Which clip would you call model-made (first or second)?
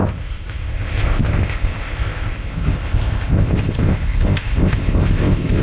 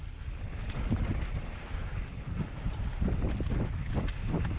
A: first